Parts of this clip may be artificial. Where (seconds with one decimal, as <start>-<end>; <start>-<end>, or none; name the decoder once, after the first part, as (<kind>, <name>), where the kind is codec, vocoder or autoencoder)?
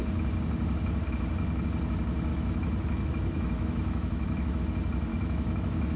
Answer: 2.3-4.6 (autoencoder, DAC-VAE); 5.1-6.0